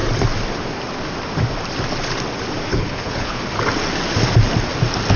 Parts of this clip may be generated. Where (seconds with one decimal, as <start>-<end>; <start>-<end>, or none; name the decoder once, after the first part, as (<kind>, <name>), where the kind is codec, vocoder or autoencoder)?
2.7-3.4 (codec, HILCodec)